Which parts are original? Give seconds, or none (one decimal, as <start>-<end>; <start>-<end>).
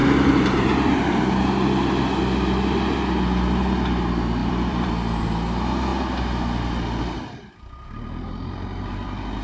1.0-4.4; 4.9-9.4